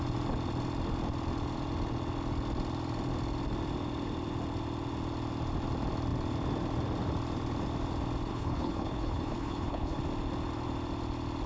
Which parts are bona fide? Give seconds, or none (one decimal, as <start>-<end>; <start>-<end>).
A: 0.0-8.3; 10.0-11.5